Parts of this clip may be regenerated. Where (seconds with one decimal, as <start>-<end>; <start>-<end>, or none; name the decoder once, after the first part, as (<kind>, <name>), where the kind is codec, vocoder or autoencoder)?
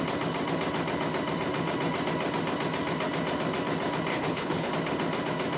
4.1-4.7 (codec, HILCodec)